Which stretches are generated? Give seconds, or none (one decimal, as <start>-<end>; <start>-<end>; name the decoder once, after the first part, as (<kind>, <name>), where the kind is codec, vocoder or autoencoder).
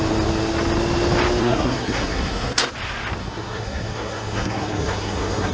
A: 1.4-2.7 (codec, SNAC); 3.2-5.5